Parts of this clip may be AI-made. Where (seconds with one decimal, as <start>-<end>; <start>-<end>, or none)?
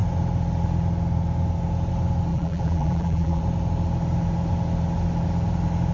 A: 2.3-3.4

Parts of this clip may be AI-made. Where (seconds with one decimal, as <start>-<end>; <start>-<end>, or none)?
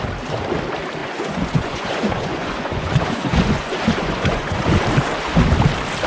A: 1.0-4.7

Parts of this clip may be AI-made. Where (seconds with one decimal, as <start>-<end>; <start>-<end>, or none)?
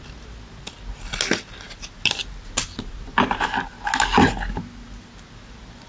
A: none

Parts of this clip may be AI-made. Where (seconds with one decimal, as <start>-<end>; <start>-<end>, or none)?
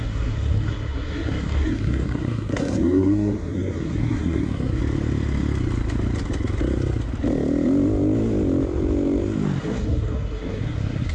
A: 0.0-4.8; 9.6-11.1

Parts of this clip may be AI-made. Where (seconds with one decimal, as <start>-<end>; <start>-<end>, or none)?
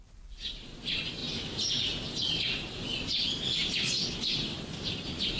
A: none